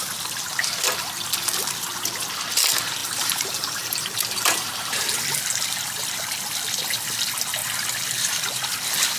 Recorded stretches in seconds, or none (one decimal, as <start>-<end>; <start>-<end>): 0.0-3.0; 5.2-9.2